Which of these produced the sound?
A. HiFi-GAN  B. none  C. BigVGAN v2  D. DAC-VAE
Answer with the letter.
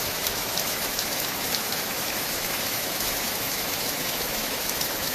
D